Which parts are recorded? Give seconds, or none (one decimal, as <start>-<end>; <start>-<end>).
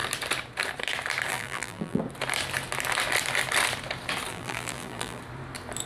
0.0-1.3; 2.0-4.3; 5.2-5.9